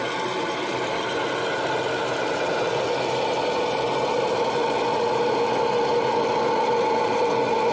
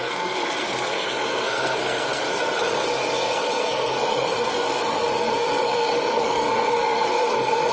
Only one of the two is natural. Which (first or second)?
first